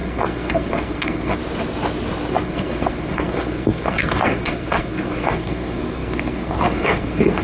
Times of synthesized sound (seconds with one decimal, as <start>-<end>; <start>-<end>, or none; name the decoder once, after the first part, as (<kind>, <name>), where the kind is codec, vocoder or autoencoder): 0.0-1.4 (codec, SNAC); 2.3-7.4